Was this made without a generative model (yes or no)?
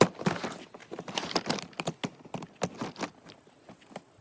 yes